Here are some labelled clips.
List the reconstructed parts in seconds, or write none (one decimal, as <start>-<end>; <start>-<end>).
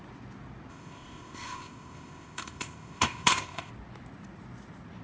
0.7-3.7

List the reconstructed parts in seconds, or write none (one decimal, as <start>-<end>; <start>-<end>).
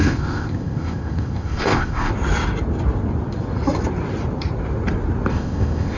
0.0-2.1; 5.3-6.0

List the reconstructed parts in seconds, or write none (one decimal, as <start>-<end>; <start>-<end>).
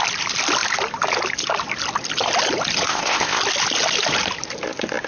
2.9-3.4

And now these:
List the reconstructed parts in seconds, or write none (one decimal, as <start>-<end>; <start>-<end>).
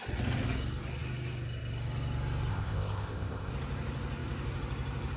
2.5-3.5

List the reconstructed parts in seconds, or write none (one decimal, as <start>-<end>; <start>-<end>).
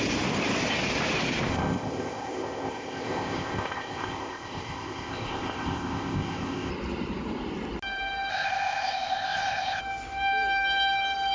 1.5-6.7; 8.3-9.8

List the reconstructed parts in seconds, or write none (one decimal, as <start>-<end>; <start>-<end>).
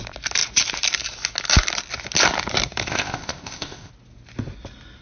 2.9-3.9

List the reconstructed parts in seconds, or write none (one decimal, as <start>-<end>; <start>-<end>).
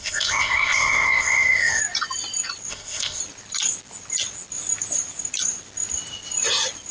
0.0-1.8; 2.7-3.2